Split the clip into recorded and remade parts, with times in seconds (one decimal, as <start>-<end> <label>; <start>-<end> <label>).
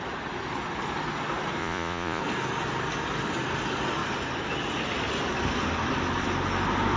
0.0-1.6 recorded; 1.6-2.2 remade; 2.2-7.0 recorded